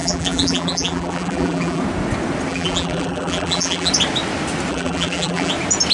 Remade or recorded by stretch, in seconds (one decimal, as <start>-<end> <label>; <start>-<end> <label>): 0.0-1.8 remade; 1.8-2.5 recorded; 2.5-3.9 remade; 3.9-4.7 recorded; 4.7-5.5 remade; 5.5-5.9 recorded